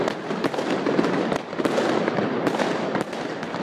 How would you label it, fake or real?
real